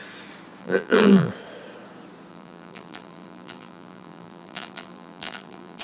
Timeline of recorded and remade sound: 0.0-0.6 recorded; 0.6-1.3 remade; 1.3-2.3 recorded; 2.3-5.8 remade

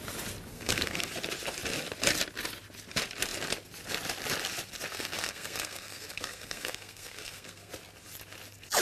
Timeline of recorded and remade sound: 0.0-0.5 recorded; 0.5-1.1 remade; 1.1-4.9 recorded; 4.9-7.7 remade; 7.7-8.8 recorded

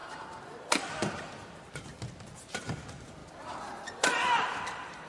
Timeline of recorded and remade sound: 0.0-0.8 recorded; 0.8-1.9 remade; 1.9-2.4 recorded; 2.4-3.2 remade; 3.2-4.0 recorded; 4.0-5.1 remade

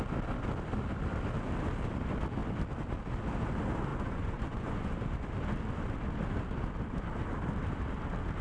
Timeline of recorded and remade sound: 0.0-3.9 recorded; 3.9-4.9 remade; 4.9-8.4 recorded